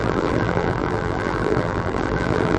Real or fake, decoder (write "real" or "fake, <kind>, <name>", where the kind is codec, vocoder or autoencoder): fake, vocoder, BigVGAN v2